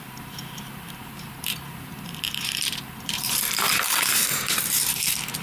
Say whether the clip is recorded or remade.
remade